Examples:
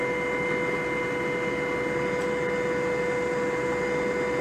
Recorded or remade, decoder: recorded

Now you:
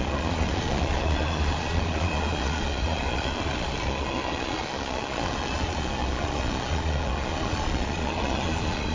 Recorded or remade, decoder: remade, vocoder, Vocos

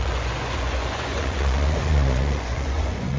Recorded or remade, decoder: remade, vocoder, Vocos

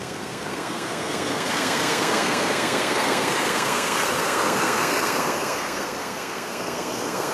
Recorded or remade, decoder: remade, codec, SNAC